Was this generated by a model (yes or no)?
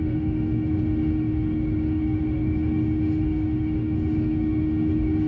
yes